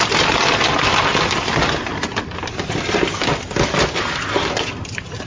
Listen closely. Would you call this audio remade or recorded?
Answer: recorded